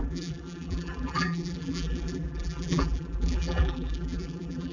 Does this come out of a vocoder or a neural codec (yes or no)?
yes